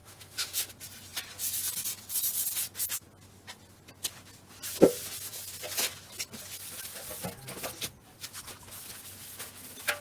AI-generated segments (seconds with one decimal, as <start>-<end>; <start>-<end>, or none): 0.0-0.7